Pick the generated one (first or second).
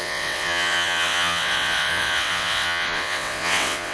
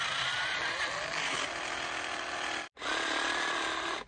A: first